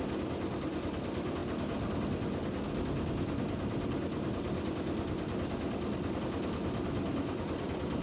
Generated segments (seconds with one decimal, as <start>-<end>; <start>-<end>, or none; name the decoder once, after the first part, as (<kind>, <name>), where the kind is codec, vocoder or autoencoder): none